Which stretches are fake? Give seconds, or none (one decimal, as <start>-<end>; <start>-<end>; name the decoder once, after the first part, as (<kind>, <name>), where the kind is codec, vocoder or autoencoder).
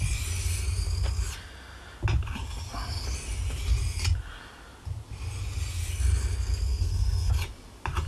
6.7-7.3 (codec, SNAC)